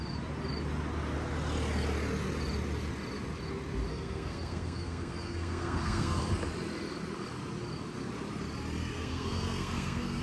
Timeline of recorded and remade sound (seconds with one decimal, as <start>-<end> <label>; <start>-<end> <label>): 0.0-3.9 recorded; 3.9-6.2 remade; 6.2-8.8 recorded; 8.8-10.2 remade